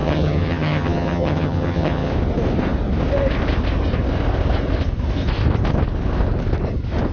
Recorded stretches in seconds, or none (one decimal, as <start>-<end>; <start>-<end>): 2.1-7.1